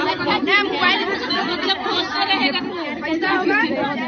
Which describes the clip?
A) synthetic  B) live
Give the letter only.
A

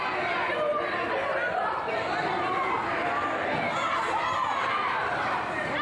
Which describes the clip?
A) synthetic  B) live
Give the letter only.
B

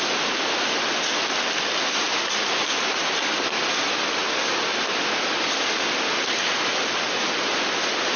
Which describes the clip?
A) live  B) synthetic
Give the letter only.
A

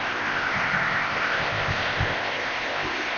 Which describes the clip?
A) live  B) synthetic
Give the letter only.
B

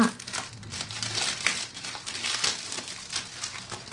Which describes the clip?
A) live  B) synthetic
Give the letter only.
A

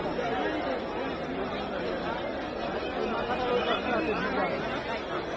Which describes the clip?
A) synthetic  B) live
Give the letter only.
B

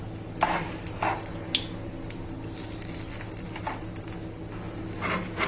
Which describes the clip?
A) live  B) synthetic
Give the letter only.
A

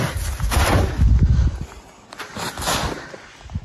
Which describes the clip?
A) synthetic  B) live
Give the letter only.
B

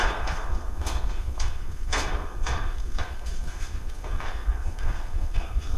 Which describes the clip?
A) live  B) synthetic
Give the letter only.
B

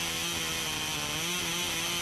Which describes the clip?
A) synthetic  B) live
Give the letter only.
B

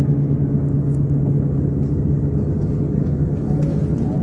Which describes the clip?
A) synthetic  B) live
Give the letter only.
B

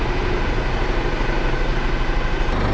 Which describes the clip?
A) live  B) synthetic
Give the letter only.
A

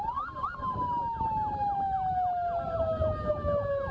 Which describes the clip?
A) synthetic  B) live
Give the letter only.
B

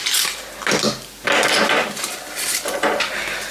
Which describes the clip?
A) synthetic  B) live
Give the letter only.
B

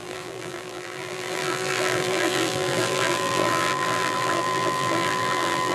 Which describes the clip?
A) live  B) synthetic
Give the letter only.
B